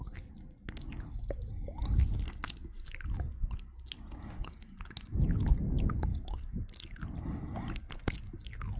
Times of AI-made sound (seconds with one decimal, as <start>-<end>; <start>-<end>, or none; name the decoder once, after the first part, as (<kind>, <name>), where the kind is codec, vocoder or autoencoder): 6.1-6.6 (codec, DAC)